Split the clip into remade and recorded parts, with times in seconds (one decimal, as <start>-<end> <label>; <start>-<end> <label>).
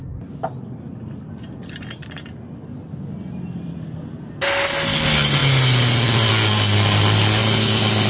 0.0-8.1 recorded